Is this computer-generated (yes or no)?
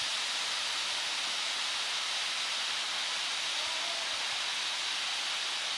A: no